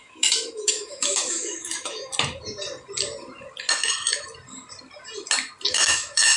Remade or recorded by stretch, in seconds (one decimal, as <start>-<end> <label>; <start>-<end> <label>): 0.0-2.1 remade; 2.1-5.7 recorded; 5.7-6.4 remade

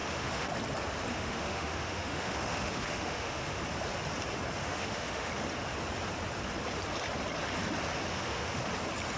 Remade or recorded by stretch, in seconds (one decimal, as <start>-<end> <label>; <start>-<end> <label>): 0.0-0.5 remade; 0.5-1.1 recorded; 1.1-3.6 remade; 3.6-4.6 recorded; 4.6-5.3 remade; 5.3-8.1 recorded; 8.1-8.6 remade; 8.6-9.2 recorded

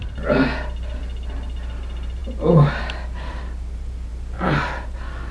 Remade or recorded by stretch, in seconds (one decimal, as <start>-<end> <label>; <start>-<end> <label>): 0.0-5.3 recorded

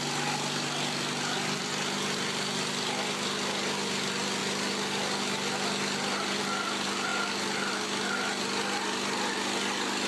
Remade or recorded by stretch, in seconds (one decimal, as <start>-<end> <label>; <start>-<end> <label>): 0.0-10.1 recorded